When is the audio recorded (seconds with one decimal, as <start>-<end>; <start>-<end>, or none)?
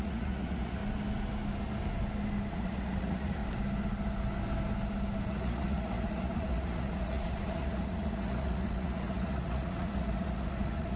0.8-2.5; 3.4-5.3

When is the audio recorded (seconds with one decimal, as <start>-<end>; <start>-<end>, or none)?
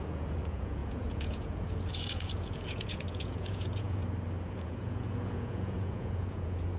4.0-4.5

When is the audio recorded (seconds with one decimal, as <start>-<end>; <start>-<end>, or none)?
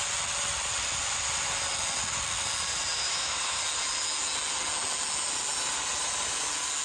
0.0-3.0; 3.6-6.8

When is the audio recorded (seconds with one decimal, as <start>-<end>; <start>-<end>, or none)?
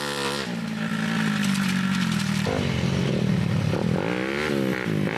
0.0-5.2